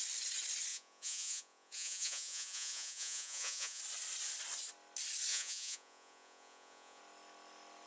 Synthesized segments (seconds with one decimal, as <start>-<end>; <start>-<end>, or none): 0.7-3.8; 5.3-7.0